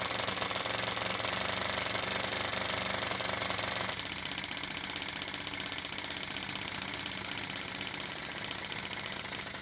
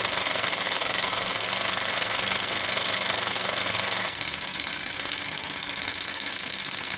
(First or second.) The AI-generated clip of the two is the second